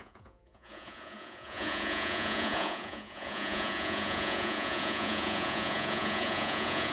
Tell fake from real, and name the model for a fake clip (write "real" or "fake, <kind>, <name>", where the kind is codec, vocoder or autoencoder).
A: fake, vocoder, Vocos